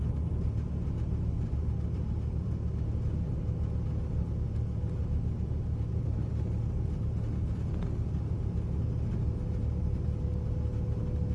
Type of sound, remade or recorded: recorded